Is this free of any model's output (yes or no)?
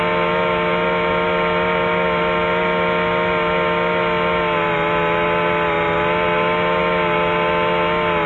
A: yes